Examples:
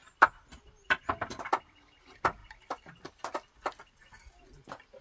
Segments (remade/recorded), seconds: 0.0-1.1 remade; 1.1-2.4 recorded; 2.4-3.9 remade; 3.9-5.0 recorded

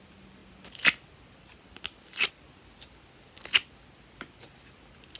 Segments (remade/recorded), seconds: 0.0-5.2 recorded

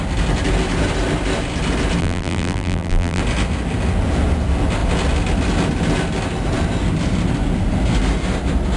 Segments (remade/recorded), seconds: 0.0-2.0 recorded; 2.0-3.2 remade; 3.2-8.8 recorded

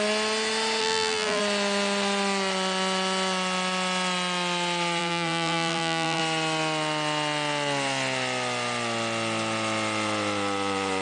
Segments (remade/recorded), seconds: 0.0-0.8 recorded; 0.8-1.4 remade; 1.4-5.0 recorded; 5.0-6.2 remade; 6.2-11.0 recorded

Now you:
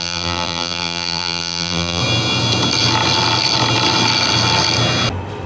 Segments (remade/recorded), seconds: 0.0-2.0 remade; 2.0-5.5 recorded

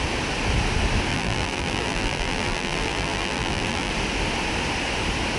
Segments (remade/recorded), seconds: 0.0-1.1 recorded; 1.1-3.9 remade; 3.9-5.4 recorded

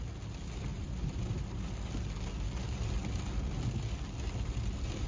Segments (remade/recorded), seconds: 0.0-0.7 recorded; 0.7-1.5 remade; 1.5-5.1 recorded

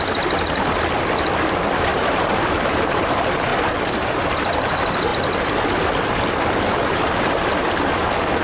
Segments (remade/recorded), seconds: 0.0-1.9 recorded; 1.9-3.7 remade; 3.7-8.4 recorded